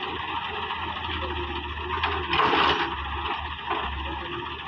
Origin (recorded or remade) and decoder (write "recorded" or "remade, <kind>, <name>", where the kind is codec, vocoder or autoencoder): recorded